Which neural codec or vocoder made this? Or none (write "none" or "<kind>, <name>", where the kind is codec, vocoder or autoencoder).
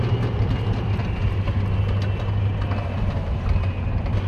none